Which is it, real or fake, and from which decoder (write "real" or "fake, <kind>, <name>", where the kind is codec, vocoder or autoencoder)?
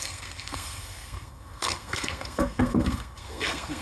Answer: fake, codec, SNAC